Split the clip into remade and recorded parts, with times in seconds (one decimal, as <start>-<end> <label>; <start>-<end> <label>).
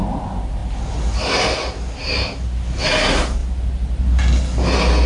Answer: 0.0-5.1 recorded